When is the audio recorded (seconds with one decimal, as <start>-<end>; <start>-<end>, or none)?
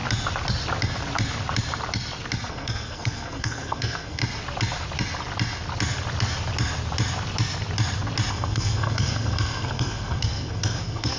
0.0-2.5; 4.2-8.3